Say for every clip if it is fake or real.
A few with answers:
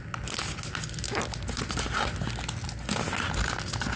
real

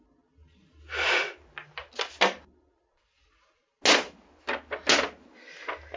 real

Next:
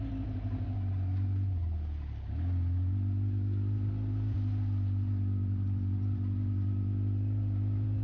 real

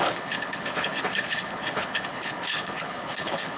fake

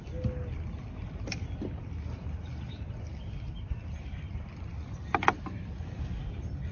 real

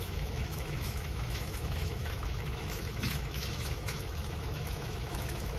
fake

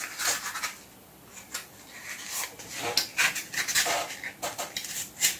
real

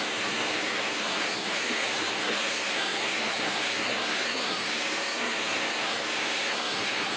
fake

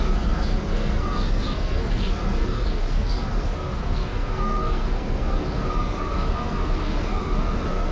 fake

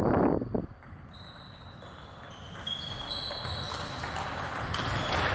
real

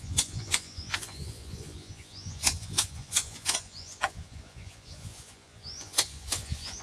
fake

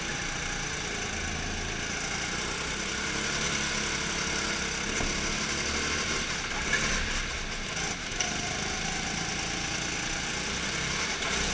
real